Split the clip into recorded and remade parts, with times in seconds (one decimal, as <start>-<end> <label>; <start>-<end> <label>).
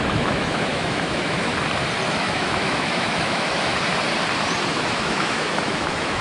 0.0-1.5 remade; 1.5-2.1 recorded; 2.1-3.7 remade; 3.7-4.7 recorded; 4.7-6.2 remade